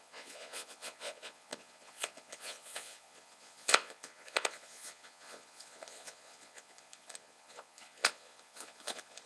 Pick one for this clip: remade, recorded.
remade